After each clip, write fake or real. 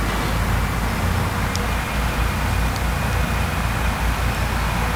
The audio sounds real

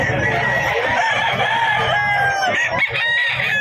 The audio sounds real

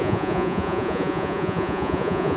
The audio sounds fake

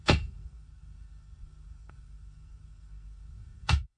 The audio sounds fake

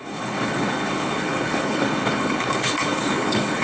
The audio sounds fake